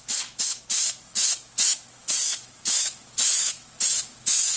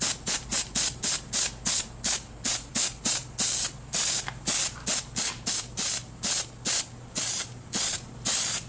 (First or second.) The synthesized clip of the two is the first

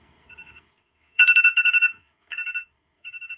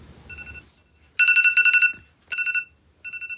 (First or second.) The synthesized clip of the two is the first